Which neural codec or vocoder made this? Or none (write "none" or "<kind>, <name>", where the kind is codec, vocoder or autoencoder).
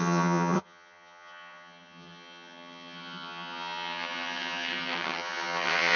vocoder, HiFi-GAN